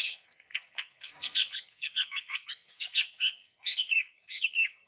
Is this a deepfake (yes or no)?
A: yes